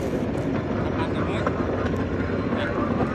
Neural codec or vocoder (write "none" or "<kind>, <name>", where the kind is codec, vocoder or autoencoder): none